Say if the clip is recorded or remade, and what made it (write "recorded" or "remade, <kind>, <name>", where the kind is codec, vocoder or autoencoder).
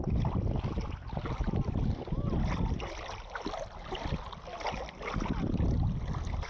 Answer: recorded